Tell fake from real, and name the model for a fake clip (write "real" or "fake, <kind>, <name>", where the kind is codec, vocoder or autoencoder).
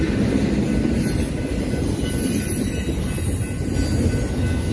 real